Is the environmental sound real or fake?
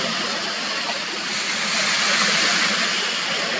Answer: real